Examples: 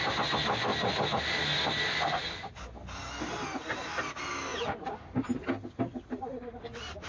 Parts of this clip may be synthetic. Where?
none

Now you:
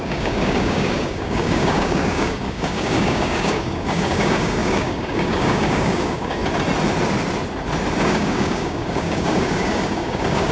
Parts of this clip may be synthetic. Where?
0.0-6.4 (codec, DAC); 8.0-10.5